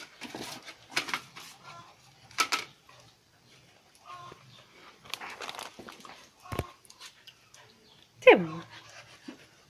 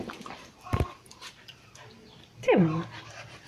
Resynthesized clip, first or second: second